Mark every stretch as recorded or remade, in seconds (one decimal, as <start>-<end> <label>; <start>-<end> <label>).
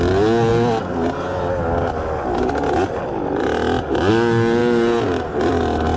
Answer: 0.0-6.0 recorded